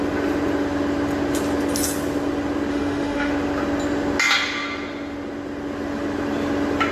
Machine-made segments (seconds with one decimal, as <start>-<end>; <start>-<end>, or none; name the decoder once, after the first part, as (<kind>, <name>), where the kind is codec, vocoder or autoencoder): 2.7-3.3 (autoencoder, DAC-VAE)